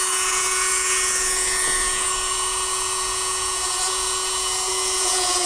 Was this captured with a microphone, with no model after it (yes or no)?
no